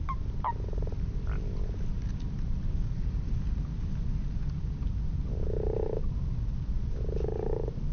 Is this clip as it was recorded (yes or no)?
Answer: yes